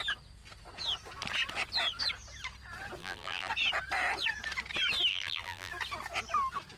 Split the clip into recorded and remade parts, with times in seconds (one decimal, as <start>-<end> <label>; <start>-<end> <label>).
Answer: 0.0-3.0 recorded; 3.0-3.5 remade; 3.5-5.1 recorded; 5.1-5.7 remade; 5.7-6.8 recorded